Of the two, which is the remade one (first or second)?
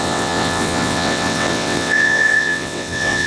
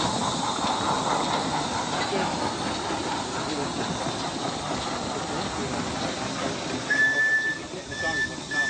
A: first